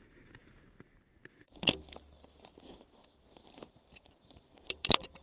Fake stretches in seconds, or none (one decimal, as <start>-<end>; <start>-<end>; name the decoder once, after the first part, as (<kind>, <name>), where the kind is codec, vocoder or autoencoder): 0.0-0.4 (vocoder, BigVGAN v2); 3.5-5.2